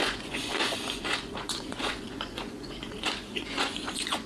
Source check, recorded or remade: remade